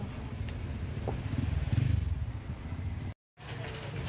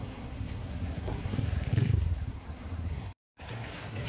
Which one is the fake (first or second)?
second